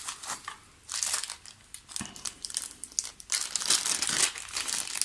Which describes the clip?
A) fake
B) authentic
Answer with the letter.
B